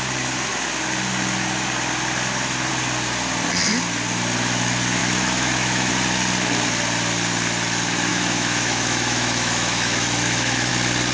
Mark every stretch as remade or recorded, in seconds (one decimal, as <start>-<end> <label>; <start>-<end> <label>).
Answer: 0.0-5.0 recorded; 5.0-5.9 remade; 5.9-8.1 recorded; 8.1-10.7 remade; 10.7-11.1 recorded

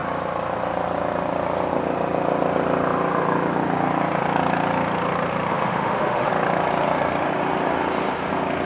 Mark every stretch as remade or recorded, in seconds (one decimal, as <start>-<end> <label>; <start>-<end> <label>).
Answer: 0.0-5.5 recorded; 5.5-6.3 remade; 6.3-8.7 recorded